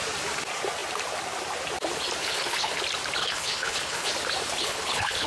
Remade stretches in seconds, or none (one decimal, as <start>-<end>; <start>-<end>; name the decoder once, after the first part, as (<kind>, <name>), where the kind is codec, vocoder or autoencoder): 2.2-2.8 (codec, HILCodec); 3.2-4.1; 4.6-5.3